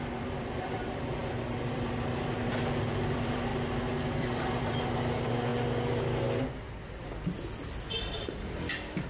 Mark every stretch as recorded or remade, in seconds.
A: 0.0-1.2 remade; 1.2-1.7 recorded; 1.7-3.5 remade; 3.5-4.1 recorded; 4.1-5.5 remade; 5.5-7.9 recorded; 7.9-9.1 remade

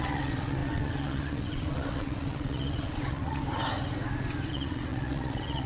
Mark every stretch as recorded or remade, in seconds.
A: 0.0-3.4 remade; 3.4-4.5 recorded; 4.5-5.7 remade

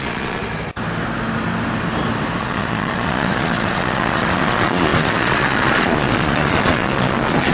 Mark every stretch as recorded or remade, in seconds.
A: 0.0-0.4 remade; 0.4-2.4 recorded; 2.4-7.5 remade

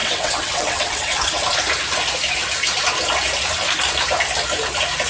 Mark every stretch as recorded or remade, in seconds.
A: 0.0-1.3 remade; 1.3-5.1 recorded

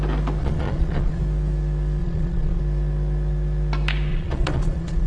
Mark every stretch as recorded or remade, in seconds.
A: 0.0-0.4 recorded; 0.4-1.2 remade; 1.2-2.0 recorded; 2.0-2.6 remade; 2.6-4.1 recorded; 4.1-5.1 remade

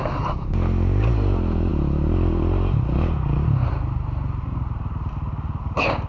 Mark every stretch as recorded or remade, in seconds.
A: 0.0-6.1 recorded

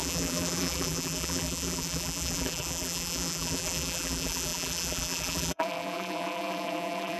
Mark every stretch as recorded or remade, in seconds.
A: 0.0-7.2 remade

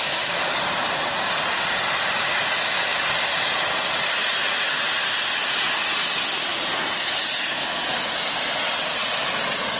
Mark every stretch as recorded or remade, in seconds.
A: 0.0-9.8 recorded